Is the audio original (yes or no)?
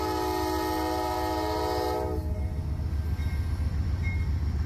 yes